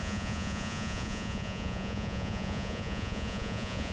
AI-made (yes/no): yes